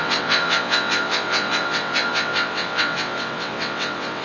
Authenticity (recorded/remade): remade